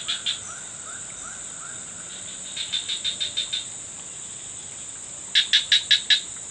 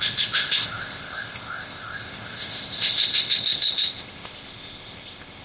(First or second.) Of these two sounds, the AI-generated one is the second